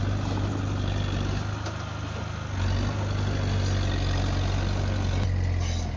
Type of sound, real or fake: real